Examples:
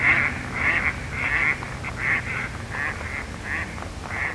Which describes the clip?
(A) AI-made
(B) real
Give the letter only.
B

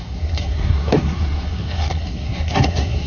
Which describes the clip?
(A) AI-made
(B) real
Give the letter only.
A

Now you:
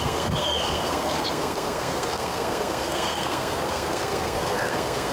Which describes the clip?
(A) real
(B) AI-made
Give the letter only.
B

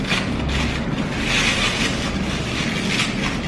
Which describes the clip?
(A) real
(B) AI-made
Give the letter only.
A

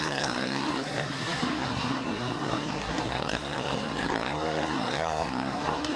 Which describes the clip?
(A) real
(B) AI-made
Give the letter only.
B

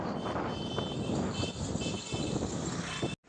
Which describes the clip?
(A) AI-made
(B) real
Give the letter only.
B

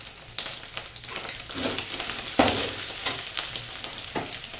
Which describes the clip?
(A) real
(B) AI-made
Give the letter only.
A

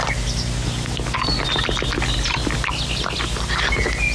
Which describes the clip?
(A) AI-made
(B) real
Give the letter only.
B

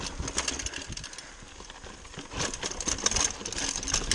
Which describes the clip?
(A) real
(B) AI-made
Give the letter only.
A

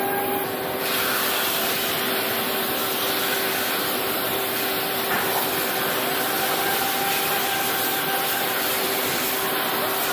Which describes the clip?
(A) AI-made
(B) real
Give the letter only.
B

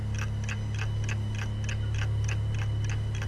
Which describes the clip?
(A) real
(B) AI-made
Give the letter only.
A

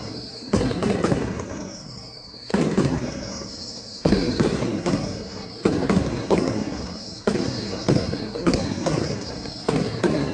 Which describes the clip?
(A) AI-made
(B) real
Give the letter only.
A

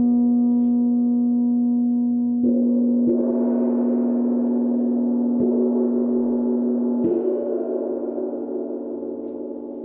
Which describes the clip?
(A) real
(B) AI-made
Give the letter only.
A